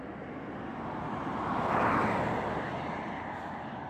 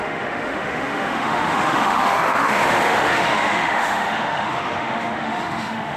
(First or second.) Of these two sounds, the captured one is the first